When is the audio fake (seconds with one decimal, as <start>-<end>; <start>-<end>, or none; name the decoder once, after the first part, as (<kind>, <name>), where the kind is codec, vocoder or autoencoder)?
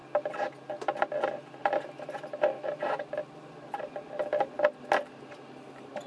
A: none